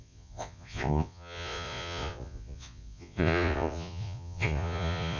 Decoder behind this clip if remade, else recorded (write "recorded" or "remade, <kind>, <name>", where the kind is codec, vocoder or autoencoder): remade, vocoder, Vocos